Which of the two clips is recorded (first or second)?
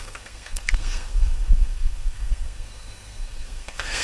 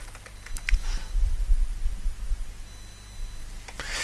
second